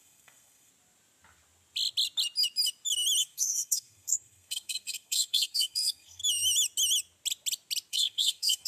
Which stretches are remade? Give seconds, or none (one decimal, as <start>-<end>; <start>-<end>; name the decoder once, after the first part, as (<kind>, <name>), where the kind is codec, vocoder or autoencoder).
0.0-0.7 (codec, SNAC); 3.2-6.2; 7.9-8.7